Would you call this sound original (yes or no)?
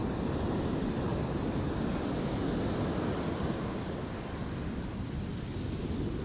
yes